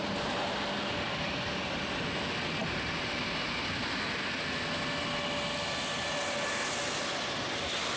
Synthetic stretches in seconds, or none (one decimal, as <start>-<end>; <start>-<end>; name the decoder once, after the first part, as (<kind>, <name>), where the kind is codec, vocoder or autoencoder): none